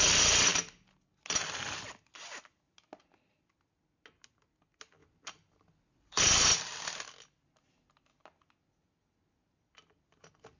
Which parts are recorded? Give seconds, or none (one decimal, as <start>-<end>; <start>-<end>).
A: 0.0-10.6